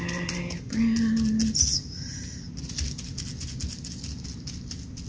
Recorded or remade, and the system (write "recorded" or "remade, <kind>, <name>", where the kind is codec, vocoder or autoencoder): recorded